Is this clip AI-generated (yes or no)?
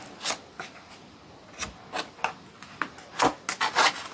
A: no